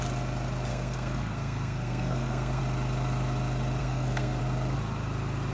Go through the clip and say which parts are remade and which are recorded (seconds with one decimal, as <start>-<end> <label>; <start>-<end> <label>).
0.0-0.7 recorded; 0.7-2.6 remade; 2.6-3.8 recorded; 3.8-4.4 remade; 4.4-5.5 recorded